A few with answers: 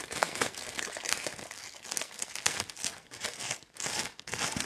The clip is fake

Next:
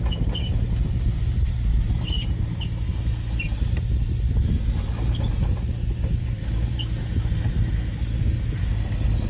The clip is real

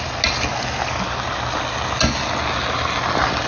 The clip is real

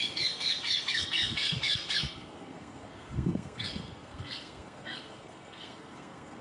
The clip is fake